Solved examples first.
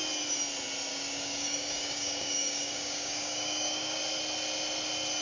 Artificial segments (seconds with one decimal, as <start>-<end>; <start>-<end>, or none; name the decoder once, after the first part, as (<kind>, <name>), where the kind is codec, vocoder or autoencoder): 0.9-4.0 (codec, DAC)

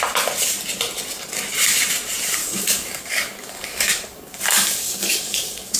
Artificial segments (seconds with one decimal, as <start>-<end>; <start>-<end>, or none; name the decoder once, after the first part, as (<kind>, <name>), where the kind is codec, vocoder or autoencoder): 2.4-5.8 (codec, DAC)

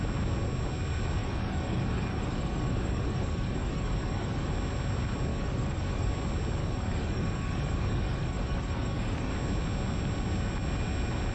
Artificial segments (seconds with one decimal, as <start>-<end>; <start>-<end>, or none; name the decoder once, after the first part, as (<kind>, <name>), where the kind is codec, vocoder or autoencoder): 1.2-4.5 (codec, DAC); 5.3-6.1; 6.6-9.3